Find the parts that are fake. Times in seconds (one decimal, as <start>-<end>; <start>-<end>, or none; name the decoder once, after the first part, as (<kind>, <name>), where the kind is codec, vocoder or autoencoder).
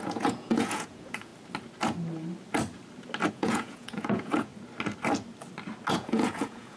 0.0-1.3 (vocoder, Vocos); 3.3-4.5; 5.9-6.8